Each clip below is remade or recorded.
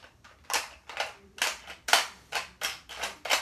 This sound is recorded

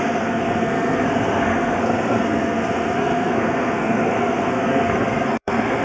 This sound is remade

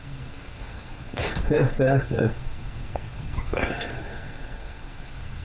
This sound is remade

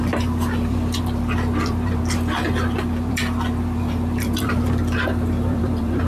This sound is remade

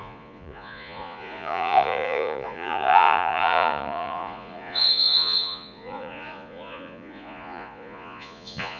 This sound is remade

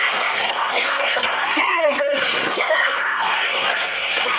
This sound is remade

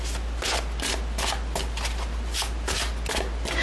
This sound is recorded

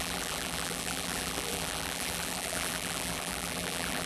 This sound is remade